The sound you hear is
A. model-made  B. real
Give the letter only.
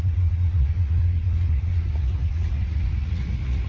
A